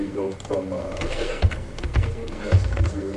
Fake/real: fake